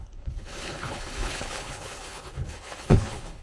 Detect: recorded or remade remade